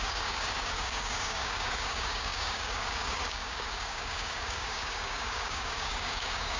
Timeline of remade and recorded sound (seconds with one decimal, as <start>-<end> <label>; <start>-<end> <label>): 0.0-6.6 remade

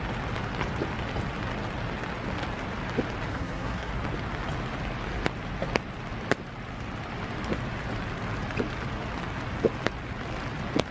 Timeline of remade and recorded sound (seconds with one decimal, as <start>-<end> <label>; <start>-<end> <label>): 0.0-3.3 recorded; 3.3-3.9 remade; 3.9-10.9 recorded